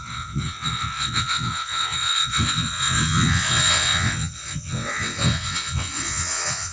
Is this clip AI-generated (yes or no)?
yes